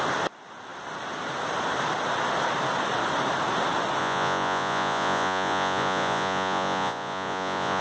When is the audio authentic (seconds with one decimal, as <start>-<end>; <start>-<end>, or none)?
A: 0.0-4.0